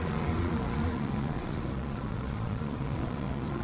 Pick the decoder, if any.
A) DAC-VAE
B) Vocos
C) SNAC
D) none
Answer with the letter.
B